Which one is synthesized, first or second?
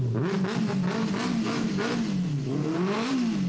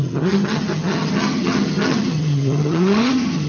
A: second